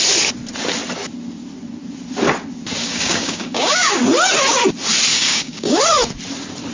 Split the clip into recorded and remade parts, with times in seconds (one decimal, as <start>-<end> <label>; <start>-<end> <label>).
0.0-2.8 recorded; 2.8-4.0 remade; 4.0-5.1 recorded; 5.1-5.8 remade; 5.8-6.7 recorded